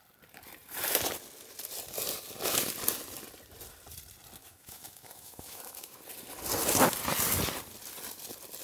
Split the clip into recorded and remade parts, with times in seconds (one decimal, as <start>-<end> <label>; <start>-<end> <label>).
0.0-4.4 recorded; 4.4-6.0 remade; 6.0-8.6 recorded

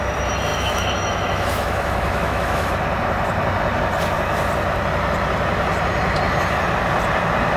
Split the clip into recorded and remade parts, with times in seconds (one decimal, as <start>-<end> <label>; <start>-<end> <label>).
0.0-0.5 recorded; 0.5-2.7 remade; 2.7-7.6 recorded

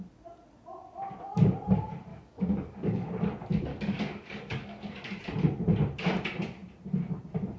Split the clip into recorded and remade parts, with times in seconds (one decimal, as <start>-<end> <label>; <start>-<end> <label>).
0.0-2.1 recorded; 2.1-3.1 remade; 3.1-3.7 recorded; 3.7-5.2 remade; 5.2-7.6 recorded

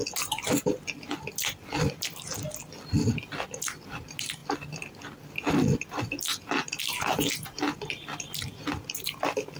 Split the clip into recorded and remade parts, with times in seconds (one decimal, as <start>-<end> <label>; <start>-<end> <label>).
0.0-9.6 recorded

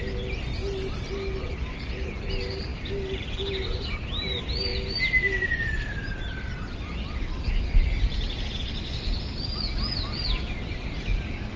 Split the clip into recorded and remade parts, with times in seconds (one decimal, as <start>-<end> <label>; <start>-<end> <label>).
0.0-11.6 recorded

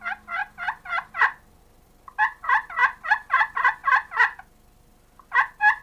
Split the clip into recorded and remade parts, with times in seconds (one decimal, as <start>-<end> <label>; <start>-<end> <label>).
0.0-5.8 recorded